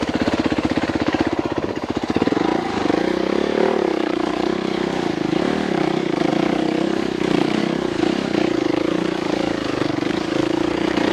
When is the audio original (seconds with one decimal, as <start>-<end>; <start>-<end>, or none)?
none

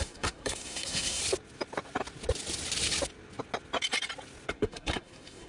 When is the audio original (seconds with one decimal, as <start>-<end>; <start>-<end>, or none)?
1.2-4.5

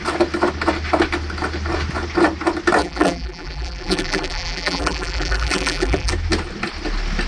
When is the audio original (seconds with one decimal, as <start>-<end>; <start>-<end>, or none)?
0.0-2.8; 6.1-7.3

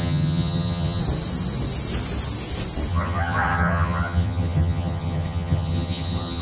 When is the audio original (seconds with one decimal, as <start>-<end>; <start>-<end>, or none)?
1.0-2.9

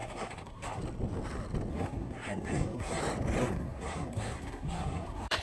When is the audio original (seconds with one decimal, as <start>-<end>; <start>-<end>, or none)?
0.8-1.7; 3.0-3.4

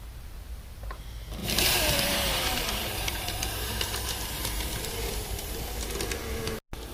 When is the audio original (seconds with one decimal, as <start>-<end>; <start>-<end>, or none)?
0.0-1.4; 5.5-6.9

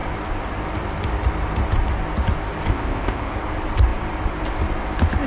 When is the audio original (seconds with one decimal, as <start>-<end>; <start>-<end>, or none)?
0.0-2.7; 3.3-5.3

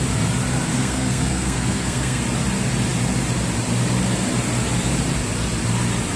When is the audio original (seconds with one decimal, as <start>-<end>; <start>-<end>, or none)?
0.0-0.7; 2.2-6.2